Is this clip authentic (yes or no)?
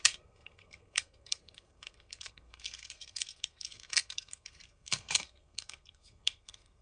no